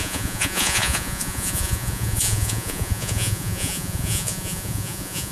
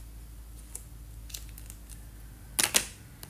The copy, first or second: first